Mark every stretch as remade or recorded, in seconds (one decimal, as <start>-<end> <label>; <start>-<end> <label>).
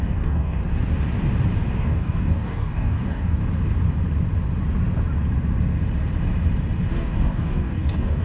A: 0.0-0.6 remade; 0.6-1.8 recorded; 1.8-3.4 remade; 3.4-6.9 recorded; 6.9-8.2 remade